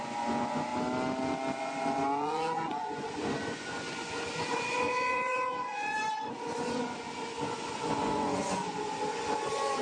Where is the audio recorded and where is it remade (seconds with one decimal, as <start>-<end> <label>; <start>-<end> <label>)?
0.0-0.7 remade; 0.7-1.6 recorded; 1.6-9.8 remade